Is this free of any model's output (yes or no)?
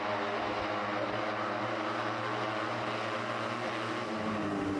yes